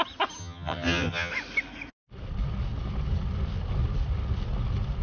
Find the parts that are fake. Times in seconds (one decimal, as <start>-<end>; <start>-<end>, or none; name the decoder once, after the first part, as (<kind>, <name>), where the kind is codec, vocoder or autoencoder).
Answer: 0.4-1.3 (vocoder, HiFi-GAN)